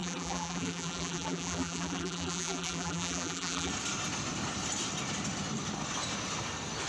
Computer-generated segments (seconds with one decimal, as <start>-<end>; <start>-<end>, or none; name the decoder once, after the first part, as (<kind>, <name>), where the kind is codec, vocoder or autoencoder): 0.0-3.7 (vocoder, BigVGAN v2)